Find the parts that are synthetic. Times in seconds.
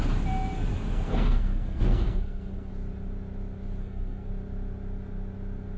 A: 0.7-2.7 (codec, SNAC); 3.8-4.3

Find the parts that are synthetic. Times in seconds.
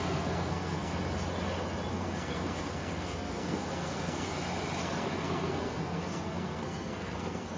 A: 0.0-0.9 (codec, SNAC); 1.9-4.3; 4.8-7.6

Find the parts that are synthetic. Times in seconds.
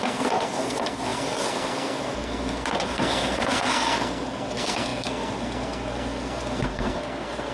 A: 0.0-7.5 (codec, SNAC)